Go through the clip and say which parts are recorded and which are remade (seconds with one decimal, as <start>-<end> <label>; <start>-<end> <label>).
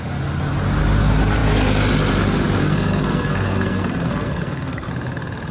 0.0-2.6 recorded; 2.6-4.9 remade; 4.9-5.5 recorded